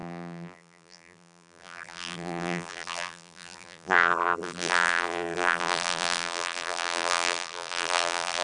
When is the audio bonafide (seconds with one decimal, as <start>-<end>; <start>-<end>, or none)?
none